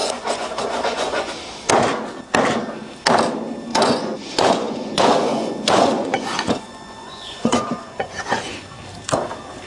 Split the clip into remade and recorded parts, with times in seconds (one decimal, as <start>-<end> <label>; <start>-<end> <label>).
0.0-1.3 remade; 1.3-3.7 recorded; 3.7-8.7 remade; 8.7-9.7 recorded